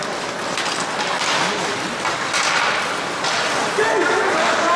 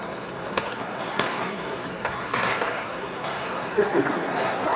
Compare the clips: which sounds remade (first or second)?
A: second